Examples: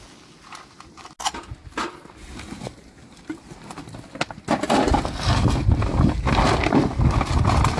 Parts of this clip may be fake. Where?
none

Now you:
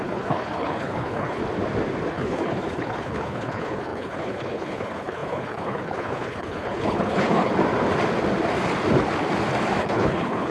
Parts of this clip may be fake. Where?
0.0-1.4 (codec, HILCodec); 2.1-7.5; 9.8-10.5

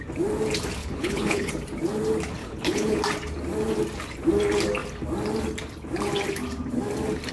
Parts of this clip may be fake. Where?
0.8-1.5 (codec, HILCodec); 2.4-3.0

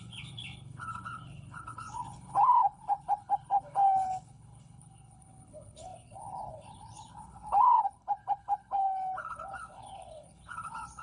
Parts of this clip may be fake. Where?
0.0-11.0 (codec, HILCodec)

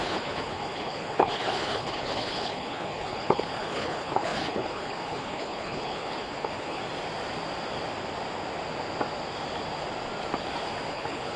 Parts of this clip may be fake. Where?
0.0-6.8 (codec, HILCodec); 10.9-11.4